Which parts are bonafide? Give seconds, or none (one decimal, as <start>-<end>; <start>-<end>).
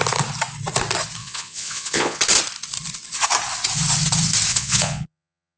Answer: 0.0-1.2; 2.2-4.5